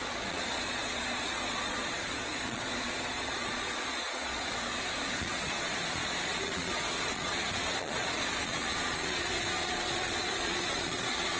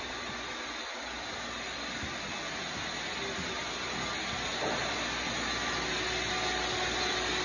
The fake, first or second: first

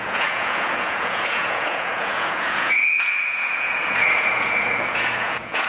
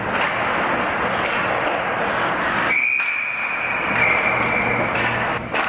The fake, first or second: first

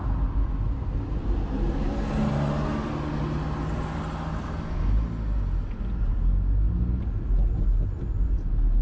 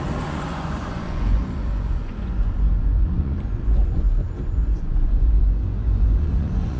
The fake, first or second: second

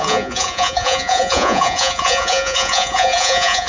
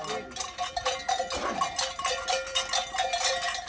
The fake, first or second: first